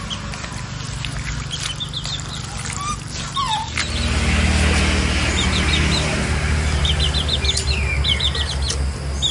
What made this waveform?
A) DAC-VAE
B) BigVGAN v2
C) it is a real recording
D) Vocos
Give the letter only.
C